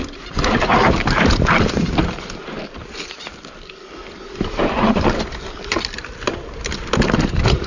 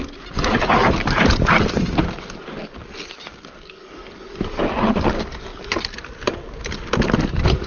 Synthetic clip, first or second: first